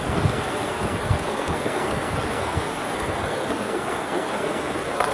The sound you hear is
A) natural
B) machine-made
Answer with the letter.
B